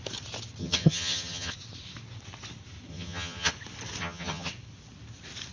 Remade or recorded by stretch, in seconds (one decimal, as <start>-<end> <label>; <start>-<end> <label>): 0.0-0.6 recorded; 0.6-1.5 remade; 1.5-2.9 recorded; 2.9-3.5 remade; 3.5-4.0 recorded; 4.0-4.5 remade; 4.5-5.5 recorded